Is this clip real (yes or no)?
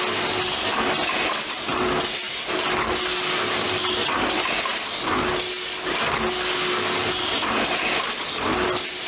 yes